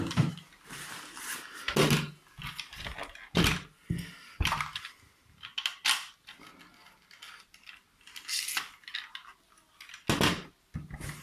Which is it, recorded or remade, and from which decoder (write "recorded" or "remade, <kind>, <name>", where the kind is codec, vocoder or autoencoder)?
recorded